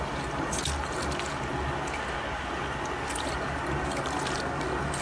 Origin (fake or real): real